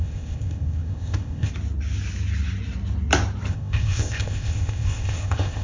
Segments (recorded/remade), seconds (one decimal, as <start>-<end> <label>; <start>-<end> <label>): 0.0-1.5 remade; 1.5-3.5 recorded; 3.5-5.6 remade